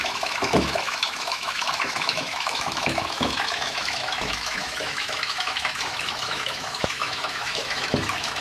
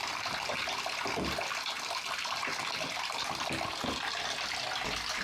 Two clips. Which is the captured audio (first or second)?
second